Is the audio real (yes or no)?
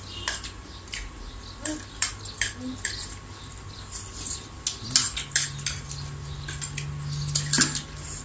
yes